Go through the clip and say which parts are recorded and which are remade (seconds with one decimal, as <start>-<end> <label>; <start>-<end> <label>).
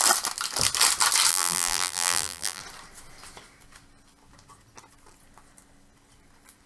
0.0-1.3 recorded; 1.3-2.6 remade; 2.6-6.7 recorded